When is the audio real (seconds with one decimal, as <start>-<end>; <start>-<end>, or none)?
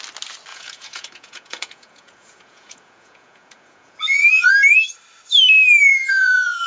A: 0.0-0.5; 4.5-5.9